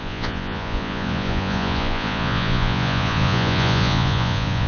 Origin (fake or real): fake